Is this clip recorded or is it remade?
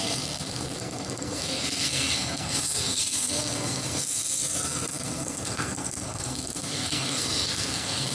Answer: remade